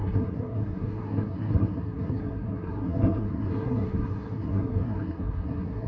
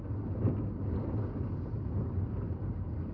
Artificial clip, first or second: first